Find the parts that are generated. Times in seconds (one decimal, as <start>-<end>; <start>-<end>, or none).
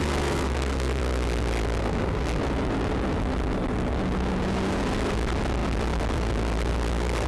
0.0-1.0; 1.8-2.4